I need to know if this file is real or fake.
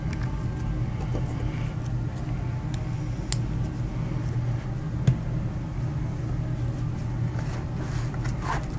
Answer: real